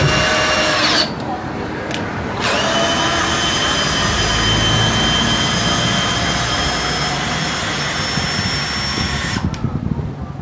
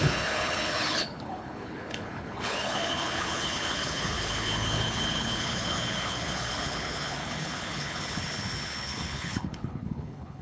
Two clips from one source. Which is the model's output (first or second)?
second